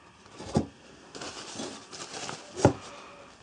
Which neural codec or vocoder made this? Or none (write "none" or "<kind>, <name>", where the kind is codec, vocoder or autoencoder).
none